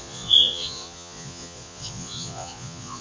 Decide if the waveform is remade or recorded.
remade